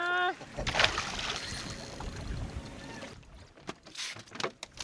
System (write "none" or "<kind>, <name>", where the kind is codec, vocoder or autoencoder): none